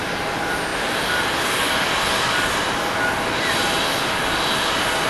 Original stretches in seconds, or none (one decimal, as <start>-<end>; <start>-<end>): 0.0-5.1